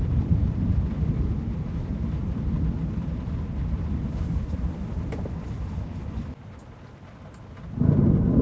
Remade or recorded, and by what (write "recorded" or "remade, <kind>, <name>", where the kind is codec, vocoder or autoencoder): recorded